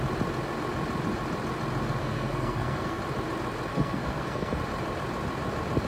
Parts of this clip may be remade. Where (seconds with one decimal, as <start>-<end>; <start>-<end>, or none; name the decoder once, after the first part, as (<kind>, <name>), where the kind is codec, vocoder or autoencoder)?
2.0-3.0 (codec, SNAC); 3.7-4.6